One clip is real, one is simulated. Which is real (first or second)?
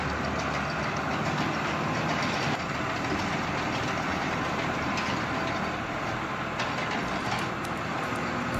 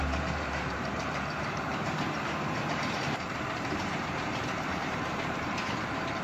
first